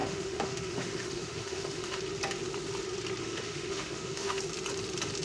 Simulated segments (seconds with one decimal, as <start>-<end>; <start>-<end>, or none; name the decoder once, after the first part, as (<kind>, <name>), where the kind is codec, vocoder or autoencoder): 0.0-2.0 (autoencoder, DAC-VAE); 3.2-4.4